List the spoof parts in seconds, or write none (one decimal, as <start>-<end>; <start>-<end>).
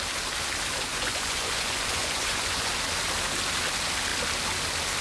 0.9-2.7